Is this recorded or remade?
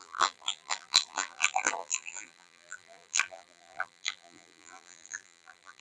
remade